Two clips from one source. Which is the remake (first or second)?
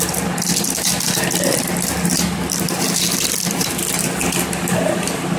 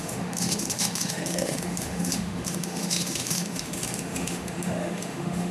second